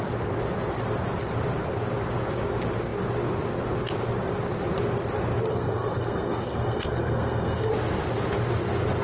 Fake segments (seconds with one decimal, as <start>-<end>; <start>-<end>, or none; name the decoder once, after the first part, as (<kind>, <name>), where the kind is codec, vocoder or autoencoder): 5.5-7.7 (codec, SNAC)